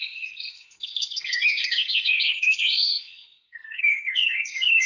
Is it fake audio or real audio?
fake